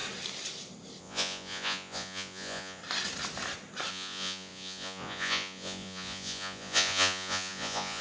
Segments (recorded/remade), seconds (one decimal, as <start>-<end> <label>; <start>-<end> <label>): 0.0-1.0 recorded; 1.0-2.8 remade; 2.8-3.9 recorded; 3.9-8.0 remade